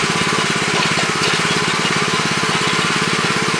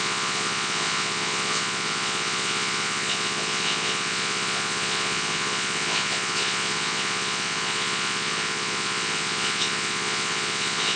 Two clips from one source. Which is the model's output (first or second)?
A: second